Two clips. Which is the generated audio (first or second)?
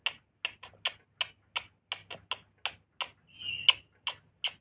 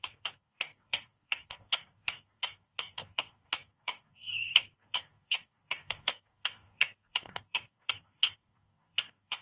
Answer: second